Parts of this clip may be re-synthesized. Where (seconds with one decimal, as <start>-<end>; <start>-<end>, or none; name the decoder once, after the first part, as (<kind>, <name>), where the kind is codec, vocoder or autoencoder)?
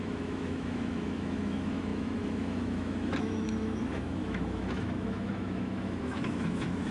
0.0-6.9 (autoencoder, DAC-VAE)